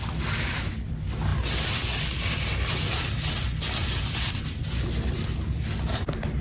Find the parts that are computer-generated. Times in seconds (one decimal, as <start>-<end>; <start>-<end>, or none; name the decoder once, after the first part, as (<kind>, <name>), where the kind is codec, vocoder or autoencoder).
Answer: none